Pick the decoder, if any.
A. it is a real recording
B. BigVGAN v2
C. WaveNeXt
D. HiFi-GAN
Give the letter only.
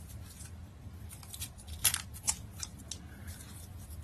A